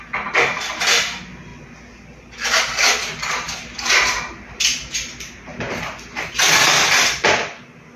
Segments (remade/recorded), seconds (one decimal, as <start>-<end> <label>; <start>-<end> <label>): 0.0-8.0 recorded